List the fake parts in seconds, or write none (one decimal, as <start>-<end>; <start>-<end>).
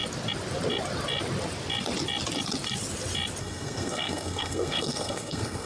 3.4-5.7